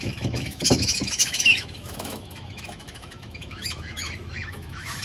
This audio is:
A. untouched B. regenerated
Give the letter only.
B